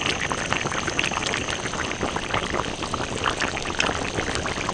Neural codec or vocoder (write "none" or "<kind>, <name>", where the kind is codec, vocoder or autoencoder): none